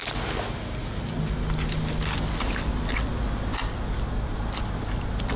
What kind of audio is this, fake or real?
real